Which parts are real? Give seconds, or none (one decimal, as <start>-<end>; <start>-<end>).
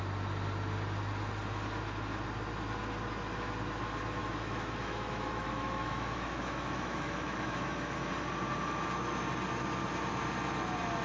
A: 0.0-4.2; 8.1-11.0